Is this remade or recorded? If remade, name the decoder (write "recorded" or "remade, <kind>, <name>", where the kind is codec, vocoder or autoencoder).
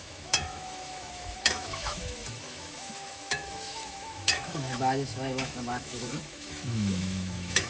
remade, autoencoder, DAC-VAE